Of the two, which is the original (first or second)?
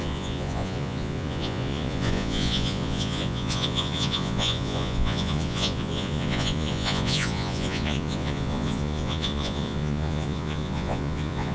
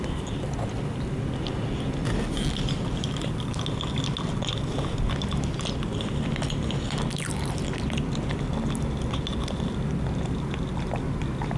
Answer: second